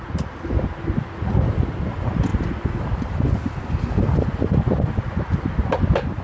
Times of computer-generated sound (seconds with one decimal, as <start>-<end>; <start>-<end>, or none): none